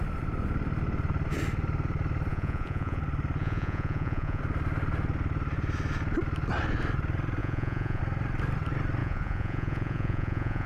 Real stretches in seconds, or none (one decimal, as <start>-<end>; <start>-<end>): 0.0-2.3; 3.0-3.4; 4.4-7.4; 8.0-9.0